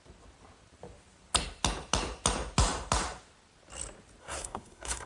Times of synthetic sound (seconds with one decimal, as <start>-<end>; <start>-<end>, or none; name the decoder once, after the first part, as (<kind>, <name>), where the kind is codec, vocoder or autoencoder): 4.2-5.1 (codec, SNAC)